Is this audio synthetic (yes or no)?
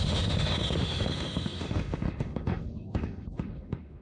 yes